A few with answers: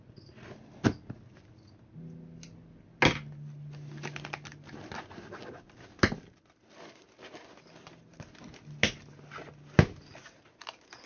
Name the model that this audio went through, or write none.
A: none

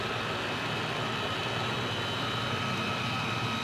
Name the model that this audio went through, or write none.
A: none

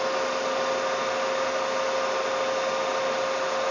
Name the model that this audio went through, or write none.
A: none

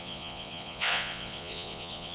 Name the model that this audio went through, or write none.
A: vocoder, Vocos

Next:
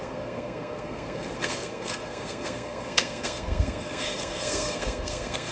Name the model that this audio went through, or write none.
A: codec, SNAC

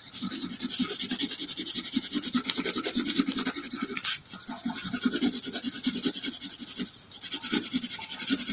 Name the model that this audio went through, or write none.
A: none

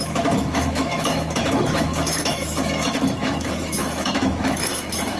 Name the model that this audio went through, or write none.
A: autoencoder, DAC-VAE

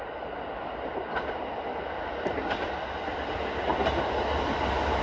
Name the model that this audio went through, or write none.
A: none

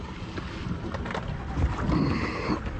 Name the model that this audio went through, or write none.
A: none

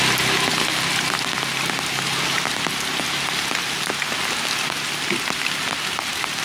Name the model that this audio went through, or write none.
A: none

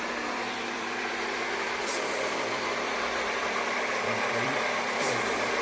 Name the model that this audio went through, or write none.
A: vocoder, BigVGAN v2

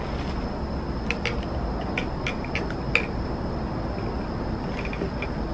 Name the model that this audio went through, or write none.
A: none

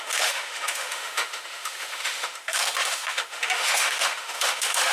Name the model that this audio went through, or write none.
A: autoencoder, DAC-VAE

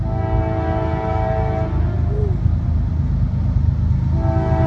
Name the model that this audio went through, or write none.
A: none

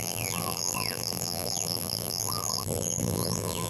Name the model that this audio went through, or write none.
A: vocoder, BigVGAN v2